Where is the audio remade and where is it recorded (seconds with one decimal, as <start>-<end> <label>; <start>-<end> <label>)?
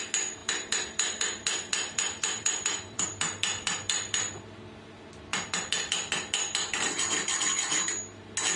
0.0-0.4 recorded; 0.4-4.4 remade; 4.4-5.3 recorded; 5.3-7.0 remade; 7.0-8.6 recorded